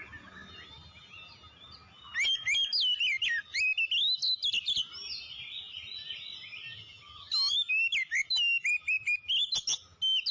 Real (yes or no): yes